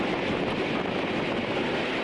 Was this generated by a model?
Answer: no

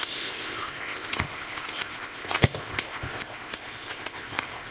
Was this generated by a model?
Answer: yes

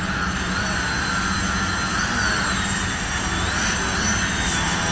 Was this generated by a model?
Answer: no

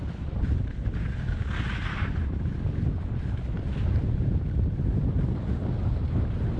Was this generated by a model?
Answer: no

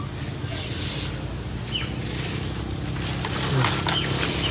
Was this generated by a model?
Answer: no